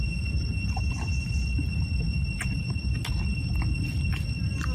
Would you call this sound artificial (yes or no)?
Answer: no